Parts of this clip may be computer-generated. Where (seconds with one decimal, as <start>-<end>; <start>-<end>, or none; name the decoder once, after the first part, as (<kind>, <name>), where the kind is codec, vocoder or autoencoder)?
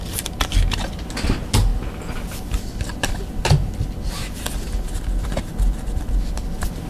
none